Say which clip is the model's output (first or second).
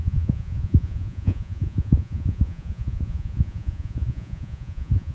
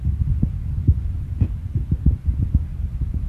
first